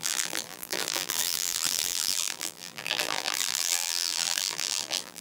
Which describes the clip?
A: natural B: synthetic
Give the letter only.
B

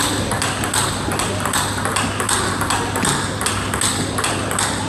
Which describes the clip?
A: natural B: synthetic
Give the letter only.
A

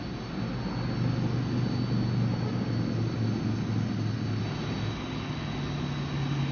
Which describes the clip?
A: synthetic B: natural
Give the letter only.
B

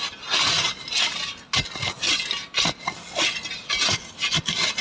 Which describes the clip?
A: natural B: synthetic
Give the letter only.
A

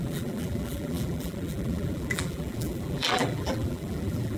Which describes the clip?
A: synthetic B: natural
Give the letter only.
A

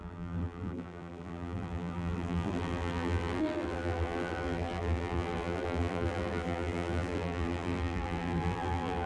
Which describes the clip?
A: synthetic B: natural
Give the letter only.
A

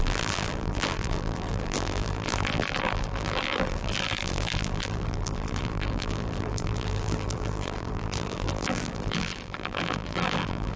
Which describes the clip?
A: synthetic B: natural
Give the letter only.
A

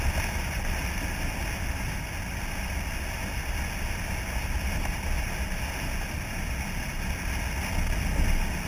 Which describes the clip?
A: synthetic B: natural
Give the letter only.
B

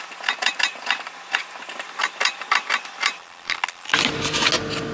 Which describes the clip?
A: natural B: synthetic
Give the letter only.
A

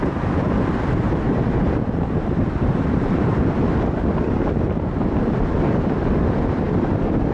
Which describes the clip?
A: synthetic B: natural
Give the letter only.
A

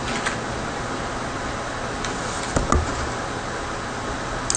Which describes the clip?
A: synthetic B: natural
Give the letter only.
B